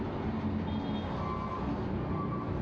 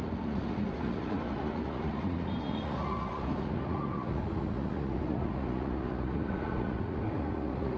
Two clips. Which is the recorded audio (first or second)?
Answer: first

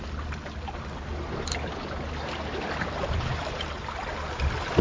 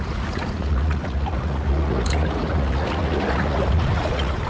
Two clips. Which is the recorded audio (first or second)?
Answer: first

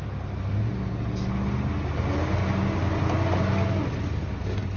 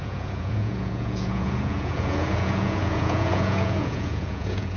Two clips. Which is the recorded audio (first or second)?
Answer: first